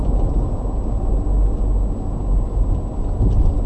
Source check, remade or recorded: recorded